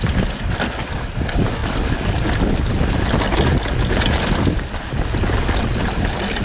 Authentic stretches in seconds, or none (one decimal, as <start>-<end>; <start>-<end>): 0.0-6.4